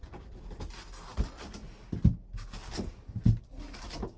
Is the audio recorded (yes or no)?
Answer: yes